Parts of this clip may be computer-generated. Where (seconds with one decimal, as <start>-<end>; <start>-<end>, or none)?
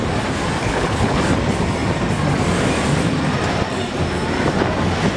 0.6-1.2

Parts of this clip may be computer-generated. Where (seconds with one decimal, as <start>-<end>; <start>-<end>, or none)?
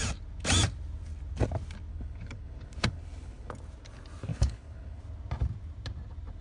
1.9-3.5; 4.3-5.0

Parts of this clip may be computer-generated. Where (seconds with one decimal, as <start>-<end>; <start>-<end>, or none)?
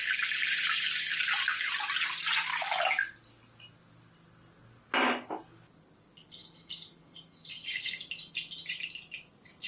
none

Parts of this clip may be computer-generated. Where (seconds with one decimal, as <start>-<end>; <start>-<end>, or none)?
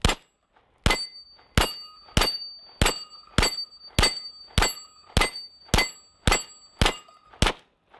none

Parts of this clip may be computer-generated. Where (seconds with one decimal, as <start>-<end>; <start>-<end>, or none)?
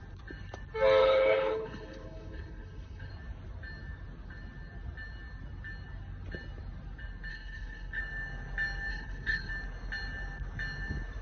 1.0-3.1; 7.3-8.0; 8.9-9.5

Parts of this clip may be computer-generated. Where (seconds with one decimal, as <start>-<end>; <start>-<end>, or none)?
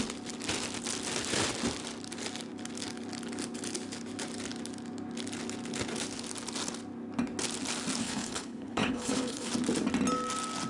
8.0-9.5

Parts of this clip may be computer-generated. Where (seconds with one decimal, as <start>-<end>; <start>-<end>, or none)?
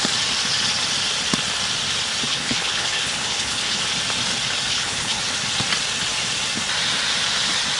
2.3-3.8; 4.7-5.2